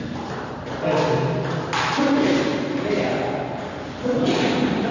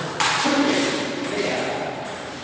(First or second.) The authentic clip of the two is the first